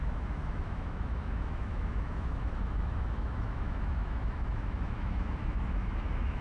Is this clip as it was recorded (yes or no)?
no